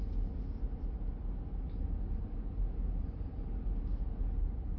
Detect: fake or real real